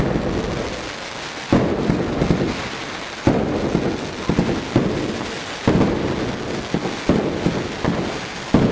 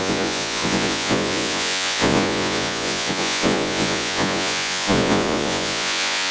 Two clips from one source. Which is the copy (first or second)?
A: second